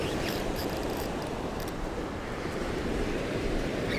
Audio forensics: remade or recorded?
remade